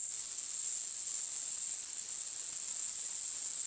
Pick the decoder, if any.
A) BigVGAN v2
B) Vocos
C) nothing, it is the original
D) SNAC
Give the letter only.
C